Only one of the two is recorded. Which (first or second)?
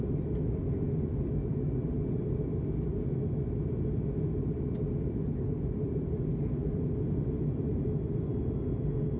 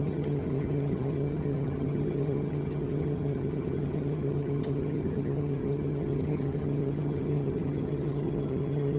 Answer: first